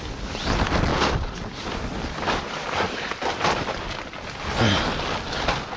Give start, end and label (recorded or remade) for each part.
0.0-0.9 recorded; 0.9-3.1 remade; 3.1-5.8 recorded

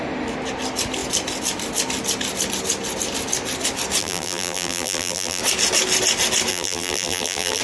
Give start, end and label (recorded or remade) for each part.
0.0-4.0 recorded; 4.0-5.4 remade; 5.4-6.5 recorded; 6.5-7.6 remade

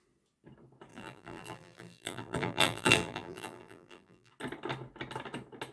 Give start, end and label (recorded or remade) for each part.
0.0-0.9 recorded; 0.9-4.3 remade; 4.3-5.7 recorded

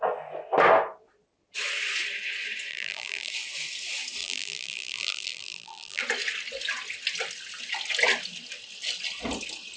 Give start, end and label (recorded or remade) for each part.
0.0-2.7 recorded; 2.7-3.3 remade; 3.3-4.2 recorded; 4.2-6.0 remade; 6.0-9.8 recorded

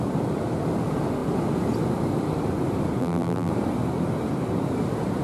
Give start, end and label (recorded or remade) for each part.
0.0-3.0 recorded; 3.0-3.5 remade; 3.5-5.2 recorded

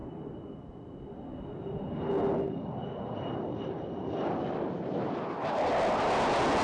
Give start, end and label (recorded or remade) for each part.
0.0-6.6 recorded